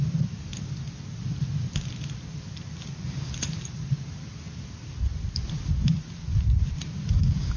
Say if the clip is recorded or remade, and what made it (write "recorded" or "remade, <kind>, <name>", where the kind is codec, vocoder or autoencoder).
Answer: recorded